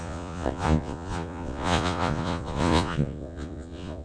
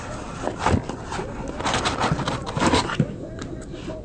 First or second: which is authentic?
second